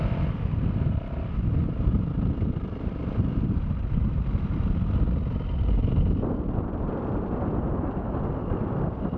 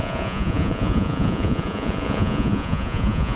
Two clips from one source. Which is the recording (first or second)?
first